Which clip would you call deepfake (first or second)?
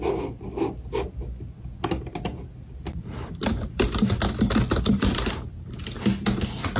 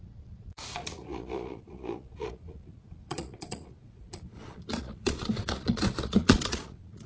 second